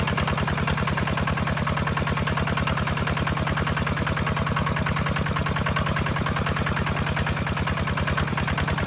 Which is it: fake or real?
real